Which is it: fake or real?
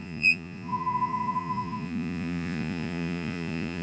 fake